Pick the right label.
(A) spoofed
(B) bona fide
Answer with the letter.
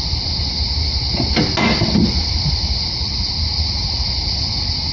B